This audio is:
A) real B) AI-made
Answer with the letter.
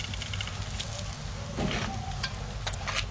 A